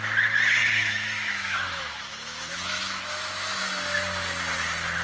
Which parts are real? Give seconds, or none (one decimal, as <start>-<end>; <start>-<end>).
0.0-0.6; 3.6-5.0